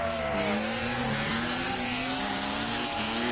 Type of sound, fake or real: real